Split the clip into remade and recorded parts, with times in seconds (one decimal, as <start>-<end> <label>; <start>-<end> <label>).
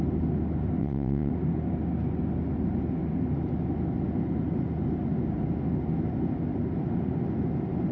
0.0-0.8 recorded; 0.8-1.3 remade; 1.3-7.9 recorded